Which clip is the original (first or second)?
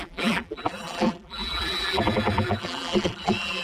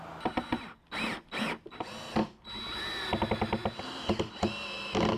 second